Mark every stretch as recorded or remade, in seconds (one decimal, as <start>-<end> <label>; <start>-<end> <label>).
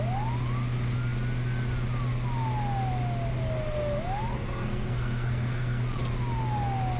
0.0-4.3 recorded; 4.3-5.8 remade; 5.8-7.0 recorded